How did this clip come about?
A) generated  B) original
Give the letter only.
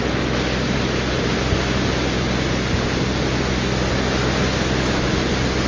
B